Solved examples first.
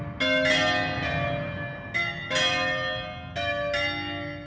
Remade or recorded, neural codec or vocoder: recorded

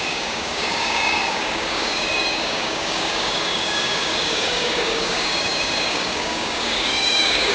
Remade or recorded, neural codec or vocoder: remade, codec, DAC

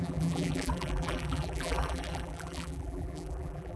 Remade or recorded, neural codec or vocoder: remade, vocoder, BigVGAN v2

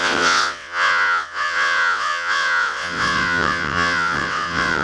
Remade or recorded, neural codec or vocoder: remade, vocoder, WaveNeXt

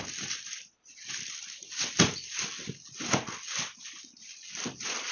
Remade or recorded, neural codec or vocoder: recorded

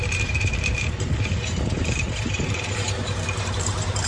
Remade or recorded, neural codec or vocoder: remade, vocoder, BigVGAN v2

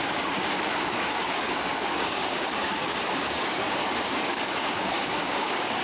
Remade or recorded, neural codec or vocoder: remade, codec, DAC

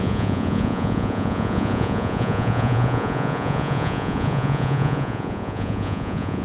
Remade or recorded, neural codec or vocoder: remade, vocoder, Vocos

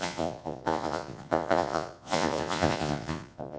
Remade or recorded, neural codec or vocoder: remade, vocoder, Vocos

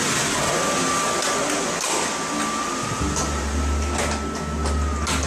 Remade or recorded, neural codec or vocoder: recorded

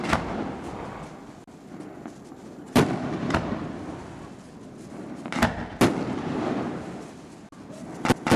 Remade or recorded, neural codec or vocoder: recorded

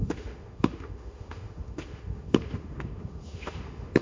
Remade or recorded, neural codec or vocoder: remade, autoencoder, DAC-VAE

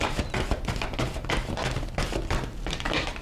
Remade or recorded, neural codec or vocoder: recorded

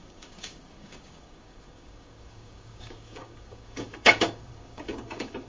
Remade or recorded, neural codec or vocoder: remade, codec, DAC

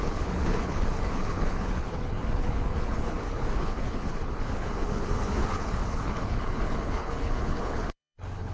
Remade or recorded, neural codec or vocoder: remade, codec, HILCodec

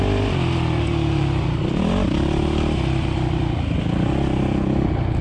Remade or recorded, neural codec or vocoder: recorded